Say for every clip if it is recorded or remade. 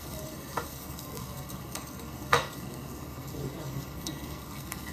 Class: remade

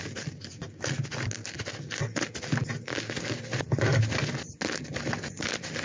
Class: recorded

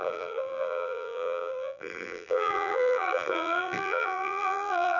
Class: remade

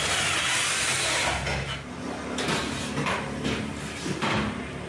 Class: recorded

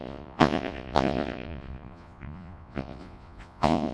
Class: remade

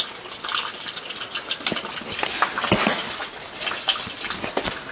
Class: recorded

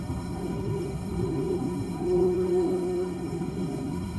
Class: remade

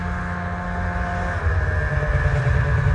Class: recorded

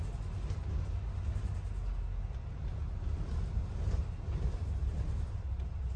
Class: recorded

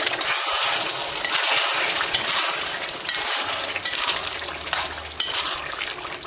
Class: recorded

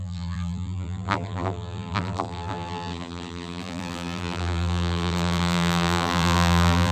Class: remade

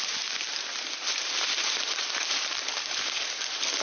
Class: recorded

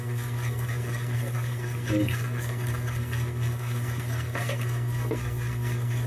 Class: remade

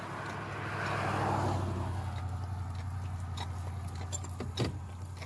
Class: recorded